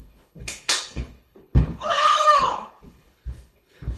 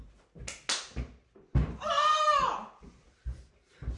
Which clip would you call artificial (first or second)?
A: first